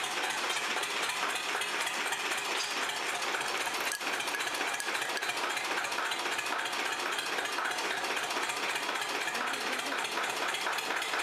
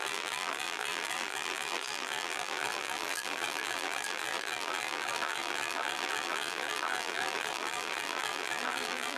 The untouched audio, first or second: first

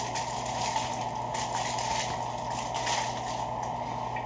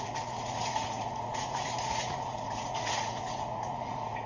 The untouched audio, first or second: first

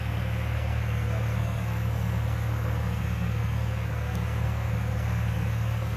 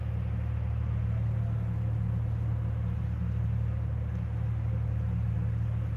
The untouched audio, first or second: second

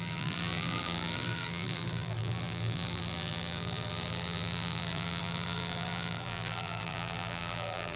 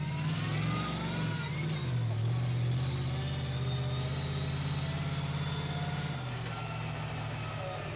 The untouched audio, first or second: second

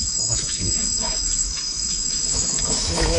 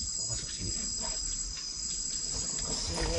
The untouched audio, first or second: second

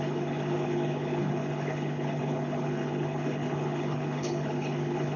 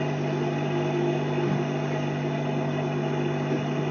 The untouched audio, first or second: second